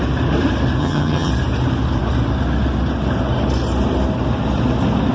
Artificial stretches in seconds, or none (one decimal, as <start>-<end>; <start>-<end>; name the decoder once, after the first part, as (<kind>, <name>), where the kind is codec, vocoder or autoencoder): 0.8-1.3 (vocoder, HiFi-GAN)